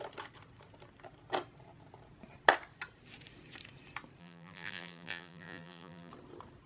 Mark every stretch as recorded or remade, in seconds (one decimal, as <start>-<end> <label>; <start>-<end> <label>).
0.0-4.2 recorded; 4.2-6.1 remade; 6.1-6.7 recorded